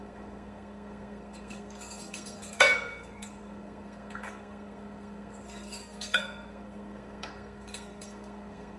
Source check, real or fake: fake